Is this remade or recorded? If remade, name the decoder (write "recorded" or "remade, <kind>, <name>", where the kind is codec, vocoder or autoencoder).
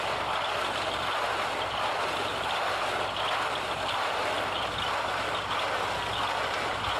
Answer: recorded